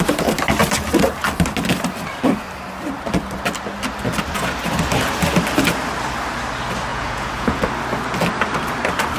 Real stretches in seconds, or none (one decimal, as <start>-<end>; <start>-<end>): 0.0-6.9; 7.6-9.2